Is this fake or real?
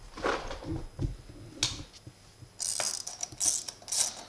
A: real